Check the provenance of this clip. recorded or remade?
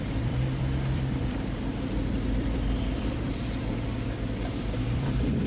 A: remade